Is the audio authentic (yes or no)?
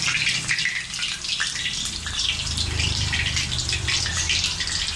yes